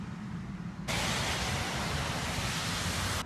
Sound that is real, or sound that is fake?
real